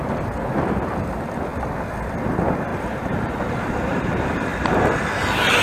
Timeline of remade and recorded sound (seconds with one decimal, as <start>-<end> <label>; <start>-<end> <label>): 0.0-0.5 remade; 0.5-2.7 recorded; 2.7-5.0 remade; 5.0-5.6 recorded